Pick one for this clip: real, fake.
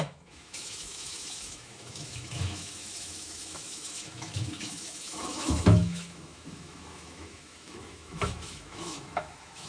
fake